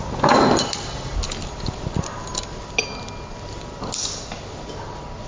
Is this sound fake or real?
real